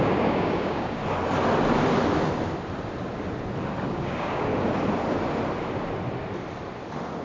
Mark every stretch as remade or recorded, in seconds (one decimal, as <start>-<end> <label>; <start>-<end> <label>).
0.0-1.0 remade; 1.0-3.9 recorded; 3.9-4.5 remade; 4.5-7.2 recorded